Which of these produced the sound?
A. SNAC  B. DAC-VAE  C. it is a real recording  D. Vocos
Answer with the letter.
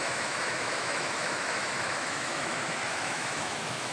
B